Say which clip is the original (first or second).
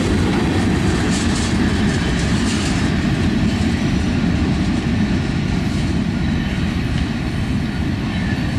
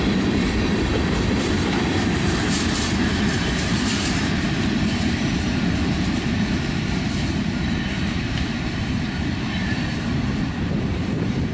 first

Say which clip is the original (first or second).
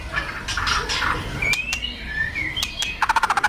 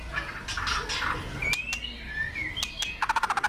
second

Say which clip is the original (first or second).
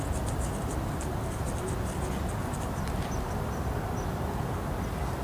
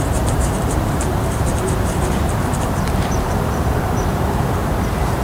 first